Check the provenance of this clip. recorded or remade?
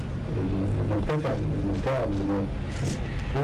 recorded